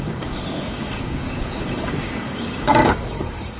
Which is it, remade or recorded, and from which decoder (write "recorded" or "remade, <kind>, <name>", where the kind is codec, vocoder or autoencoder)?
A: remade, codec, DAC